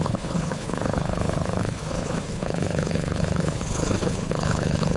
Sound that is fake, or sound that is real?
fake